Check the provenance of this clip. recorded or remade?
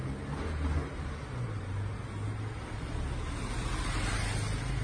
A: recorded